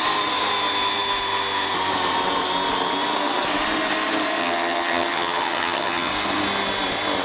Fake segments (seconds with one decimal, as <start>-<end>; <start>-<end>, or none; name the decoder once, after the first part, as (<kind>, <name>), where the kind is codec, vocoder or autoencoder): 4.4-6.1 (vocoder, HiFi-GAN)